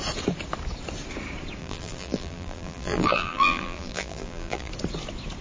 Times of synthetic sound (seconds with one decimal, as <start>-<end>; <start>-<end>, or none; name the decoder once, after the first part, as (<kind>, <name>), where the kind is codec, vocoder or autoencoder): 1.6-4.7 (vocoder, BigVGAN v2)